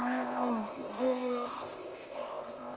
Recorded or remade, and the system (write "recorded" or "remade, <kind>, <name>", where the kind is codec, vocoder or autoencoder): remade, codec, ZipCodec